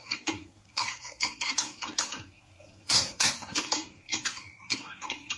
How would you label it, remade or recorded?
remade